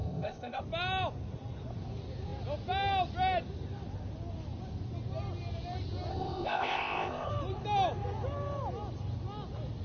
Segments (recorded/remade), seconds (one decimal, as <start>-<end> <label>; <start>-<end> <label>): 0.0-0.6 remade; 0.6-6.1 recorded; 6.1-7.3 remade; 7.3-9.8 recorded